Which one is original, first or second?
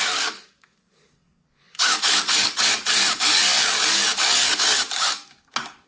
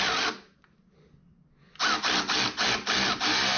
second